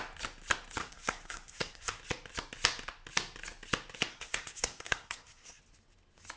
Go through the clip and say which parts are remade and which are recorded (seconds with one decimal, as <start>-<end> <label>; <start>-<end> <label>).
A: 0.0-0.8 recorded; 0.8-2.0 remade; 2.0-4.1 recorded; 4.1-5.6 remade; 5.6-6.4 recorded